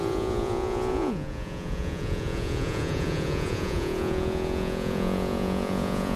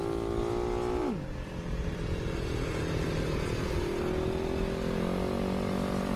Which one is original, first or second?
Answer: second